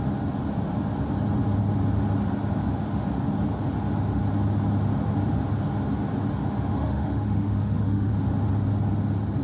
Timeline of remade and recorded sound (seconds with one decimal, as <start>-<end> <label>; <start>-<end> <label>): 0.0-6.7 recorded; 6.7-8.1 remade; 8.1-9.4 recorded